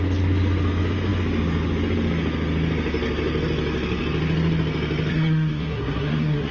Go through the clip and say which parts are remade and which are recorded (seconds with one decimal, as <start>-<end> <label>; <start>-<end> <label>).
0.0-5.1 recorded; 5.1-6.5 remade